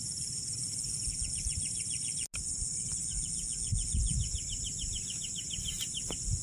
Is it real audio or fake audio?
real